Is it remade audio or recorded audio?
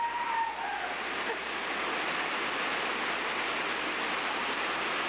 recorded